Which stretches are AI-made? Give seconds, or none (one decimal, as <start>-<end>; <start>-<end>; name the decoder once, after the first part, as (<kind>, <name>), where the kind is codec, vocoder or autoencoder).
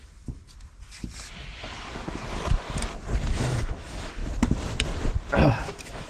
0.0-0.4 (autoencoder, DAC-VAE); 3.3-4.2; 5.5-6.1